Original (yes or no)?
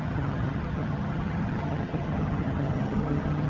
no